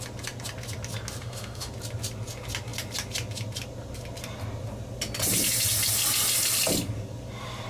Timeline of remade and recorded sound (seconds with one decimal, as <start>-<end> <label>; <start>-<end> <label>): 0.0-1.2 recorded; 1.2-1.7 remade; 1.7-7.7 recorded